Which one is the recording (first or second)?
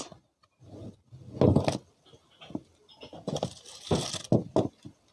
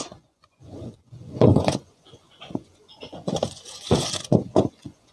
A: first